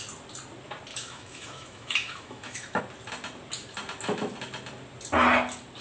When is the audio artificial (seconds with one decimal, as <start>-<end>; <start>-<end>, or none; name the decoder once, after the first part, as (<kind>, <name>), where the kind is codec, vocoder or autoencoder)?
0.9-2.8 (autoencoder, DAC-VAE)